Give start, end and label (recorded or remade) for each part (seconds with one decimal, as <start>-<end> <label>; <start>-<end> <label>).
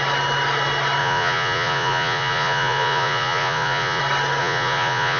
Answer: 0.0-1.0 recorded; 1.0-4.0 remade; 4.0-4.4 recorded; 4.4-5.2 remade